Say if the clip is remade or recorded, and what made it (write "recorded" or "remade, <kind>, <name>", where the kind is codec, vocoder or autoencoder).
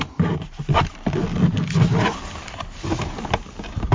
recorded